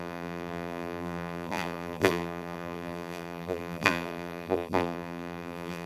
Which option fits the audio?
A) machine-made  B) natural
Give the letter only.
A